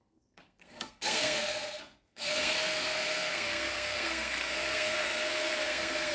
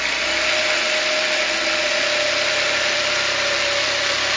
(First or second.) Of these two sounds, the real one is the second